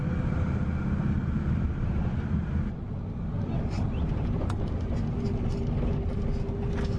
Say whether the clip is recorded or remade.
recorded